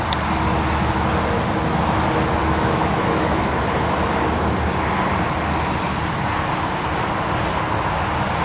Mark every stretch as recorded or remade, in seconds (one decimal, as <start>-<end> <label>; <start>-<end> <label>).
0.0-2.4 recorded; 2.4-3.5 remade; 3.5-8.4 recorded